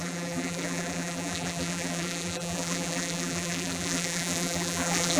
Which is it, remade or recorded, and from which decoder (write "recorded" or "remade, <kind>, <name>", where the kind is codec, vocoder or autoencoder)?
remade, vocoder, BigVGAN v2